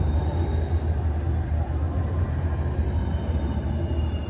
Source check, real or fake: fake